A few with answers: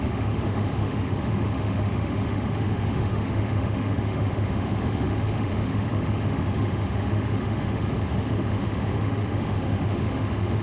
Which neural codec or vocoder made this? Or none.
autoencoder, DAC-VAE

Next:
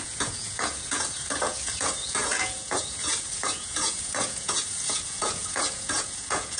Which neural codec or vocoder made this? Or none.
vocoder, Vocos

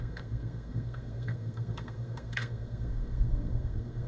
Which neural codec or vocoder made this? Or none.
codec, SNAC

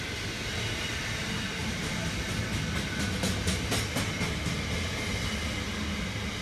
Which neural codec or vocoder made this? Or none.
none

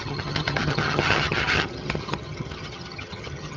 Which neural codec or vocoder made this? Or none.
vocoder, HiFi-GAN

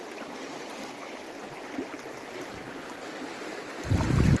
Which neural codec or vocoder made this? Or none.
vocoder, BigVGAN v2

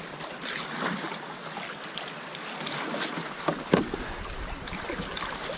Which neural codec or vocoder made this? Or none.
none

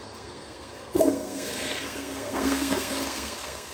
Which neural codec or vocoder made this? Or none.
codec, SNAC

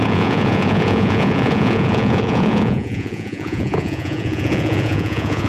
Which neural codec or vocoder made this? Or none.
vocoder, Vocos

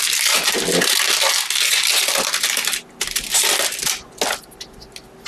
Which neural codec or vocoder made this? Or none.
none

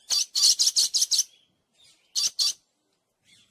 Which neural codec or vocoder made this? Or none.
none